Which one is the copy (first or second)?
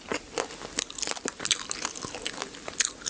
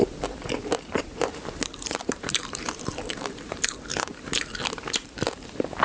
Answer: second